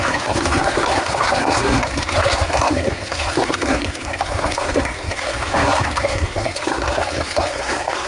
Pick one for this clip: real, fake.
fake